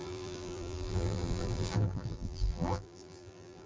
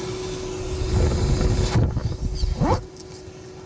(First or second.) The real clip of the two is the second